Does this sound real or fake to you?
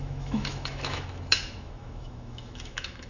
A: fake